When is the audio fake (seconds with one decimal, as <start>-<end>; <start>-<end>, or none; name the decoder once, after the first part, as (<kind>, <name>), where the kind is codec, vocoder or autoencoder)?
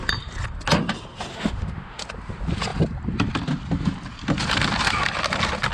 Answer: 1.3-2.0 (autoencoder, DAC-VAE)